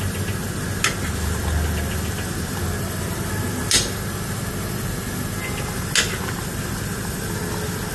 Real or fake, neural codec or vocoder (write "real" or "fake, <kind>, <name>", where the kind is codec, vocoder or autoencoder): real